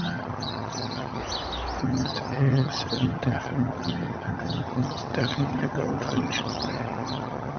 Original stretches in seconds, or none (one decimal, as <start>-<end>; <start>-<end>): 1.2-1.8